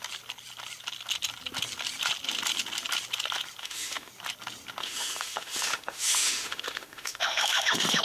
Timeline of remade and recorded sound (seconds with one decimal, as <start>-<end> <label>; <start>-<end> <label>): 0.0-3.6 recorded; 3.6-4.1 remade; 4.1-4.8 recorded; 4.8-8.0 remade